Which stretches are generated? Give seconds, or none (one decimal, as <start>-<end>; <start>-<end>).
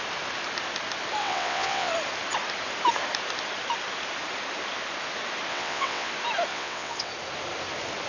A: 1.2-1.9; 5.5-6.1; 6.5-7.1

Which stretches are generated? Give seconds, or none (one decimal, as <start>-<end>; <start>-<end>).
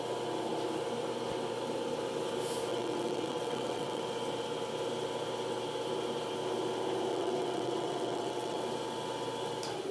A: 2.7-4.0; 7.1-8.6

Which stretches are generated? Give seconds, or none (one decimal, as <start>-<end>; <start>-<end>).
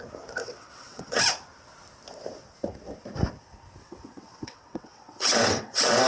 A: 0.4-1.2; 3.8-6.1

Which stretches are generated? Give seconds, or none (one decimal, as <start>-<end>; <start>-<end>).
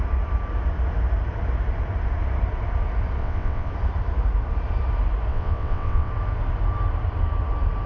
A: 3.2-3.7; 5.3-6.1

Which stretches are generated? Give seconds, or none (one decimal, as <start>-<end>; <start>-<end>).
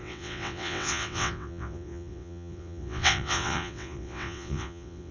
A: 0.0-5.1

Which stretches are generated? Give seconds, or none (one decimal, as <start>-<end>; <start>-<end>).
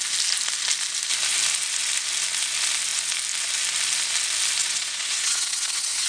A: 4.6-6.1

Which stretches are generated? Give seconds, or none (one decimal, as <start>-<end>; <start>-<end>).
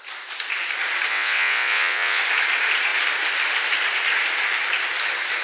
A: 1.1-2.2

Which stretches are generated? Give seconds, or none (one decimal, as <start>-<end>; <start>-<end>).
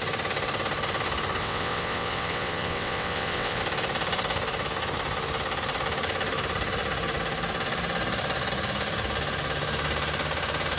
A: 1.4-3.6